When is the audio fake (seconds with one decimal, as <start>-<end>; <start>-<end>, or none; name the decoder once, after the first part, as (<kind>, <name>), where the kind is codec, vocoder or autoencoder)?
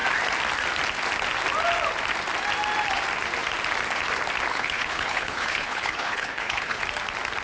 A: 4.5-6.8 (codec, HILCodec)